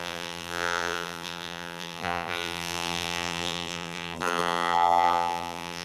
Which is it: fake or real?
fake